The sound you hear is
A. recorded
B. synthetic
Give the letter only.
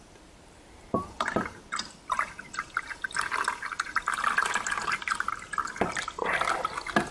A